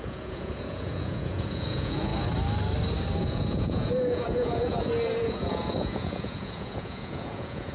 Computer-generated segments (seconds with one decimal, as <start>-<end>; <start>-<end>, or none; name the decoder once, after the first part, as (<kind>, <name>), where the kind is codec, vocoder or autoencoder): 0.0-2.1 (vocoder, Vocos); 3.2-7.7